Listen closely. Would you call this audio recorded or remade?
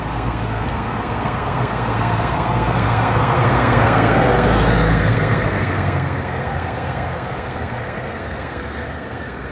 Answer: remade